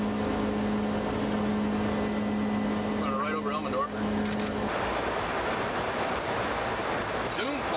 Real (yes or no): yes